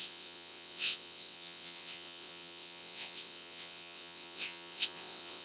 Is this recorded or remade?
remade